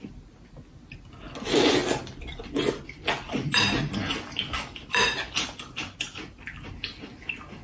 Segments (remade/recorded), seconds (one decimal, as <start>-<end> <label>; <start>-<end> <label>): 0.0-7.6 recorded